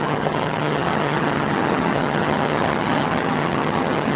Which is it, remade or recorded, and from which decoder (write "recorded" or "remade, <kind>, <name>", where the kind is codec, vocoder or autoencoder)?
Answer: remade, vocoder, HiFi-GAN